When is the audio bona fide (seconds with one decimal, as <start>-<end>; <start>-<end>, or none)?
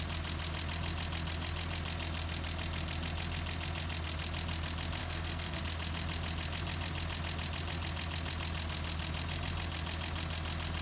0.0-5.0; 5.6-10.8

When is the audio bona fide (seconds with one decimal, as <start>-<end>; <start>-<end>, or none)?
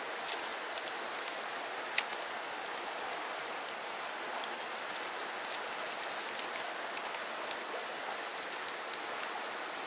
0.0-9.9